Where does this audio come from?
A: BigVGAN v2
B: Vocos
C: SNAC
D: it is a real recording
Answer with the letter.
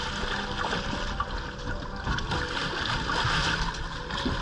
D